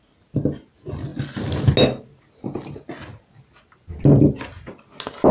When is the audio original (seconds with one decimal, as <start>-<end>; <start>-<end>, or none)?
0.0-5.3